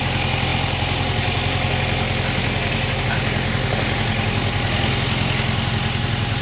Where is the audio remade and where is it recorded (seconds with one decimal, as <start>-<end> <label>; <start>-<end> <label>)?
0.0-6.4 recorded